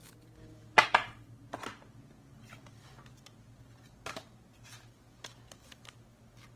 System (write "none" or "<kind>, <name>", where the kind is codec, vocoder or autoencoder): none